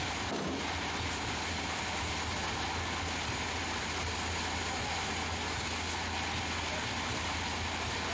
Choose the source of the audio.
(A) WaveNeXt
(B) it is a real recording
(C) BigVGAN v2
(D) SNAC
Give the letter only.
B